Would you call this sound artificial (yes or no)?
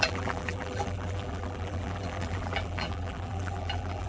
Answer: yes